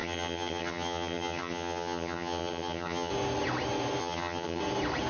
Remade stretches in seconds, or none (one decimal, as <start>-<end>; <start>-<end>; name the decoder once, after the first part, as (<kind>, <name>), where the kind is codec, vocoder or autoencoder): 0.0-3.1 (vocoder, HiFi-GAN); 4.0-4.6

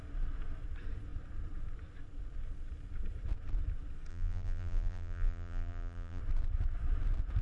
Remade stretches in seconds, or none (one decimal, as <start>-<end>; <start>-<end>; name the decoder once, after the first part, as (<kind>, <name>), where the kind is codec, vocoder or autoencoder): 4.1-6.2 (vocoder, BigVGAN v2)

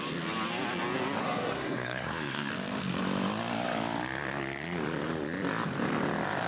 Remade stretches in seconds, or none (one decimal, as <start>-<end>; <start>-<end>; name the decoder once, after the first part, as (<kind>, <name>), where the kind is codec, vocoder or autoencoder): 1.2-2.5 (codec, SNAC)

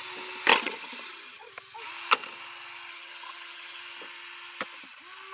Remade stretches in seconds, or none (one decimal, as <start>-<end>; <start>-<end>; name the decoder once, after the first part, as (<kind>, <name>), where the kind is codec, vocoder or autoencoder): 0.5-1.5 (vocoder, HiFi-GAN); 2.9-3.8